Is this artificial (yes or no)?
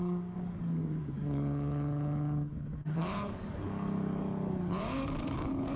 yes